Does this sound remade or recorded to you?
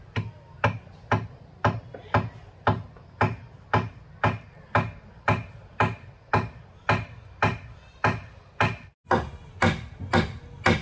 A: recorded